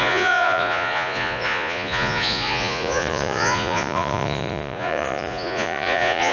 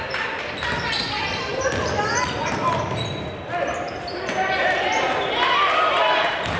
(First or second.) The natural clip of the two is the second